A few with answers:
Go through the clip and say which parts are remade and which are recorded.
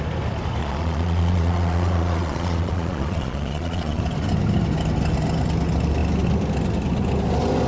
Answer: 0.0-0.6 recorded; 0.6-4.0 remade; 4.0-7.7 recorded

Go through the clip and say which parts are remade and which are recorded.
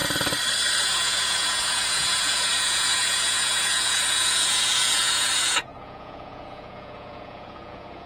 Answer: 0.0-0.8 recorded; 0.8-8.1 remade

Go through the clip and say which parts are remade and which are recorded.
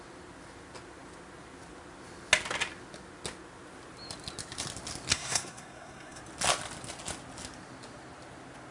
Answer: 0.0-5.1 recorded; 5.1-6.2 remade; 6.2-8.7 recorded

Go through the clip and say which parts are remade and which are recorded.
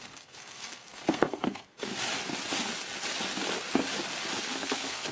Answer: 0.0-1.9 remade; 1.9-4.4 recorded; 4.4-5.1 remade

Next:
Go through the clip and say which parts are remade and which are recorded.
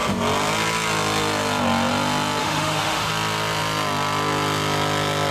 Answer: 0.0-2.4 recorded; 2.4-3.1 remade; 3.1-5.3 recorded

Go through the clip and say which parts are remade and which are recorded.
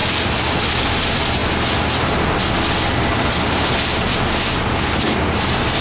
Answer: 0.0-0.6 remade; 0.6-5.8 recorded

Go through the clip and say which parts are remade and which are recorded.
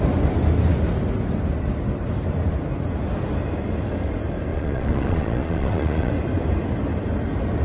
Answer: 0.0-4.5 recorded; 4.5-6.1 remade; 6.1-7.6 recorded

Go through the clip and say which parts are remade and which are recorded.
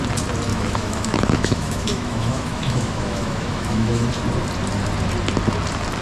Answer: 0.0-0.5 recorded; 0.5-4.1 remade; 4.1-6.0 recorded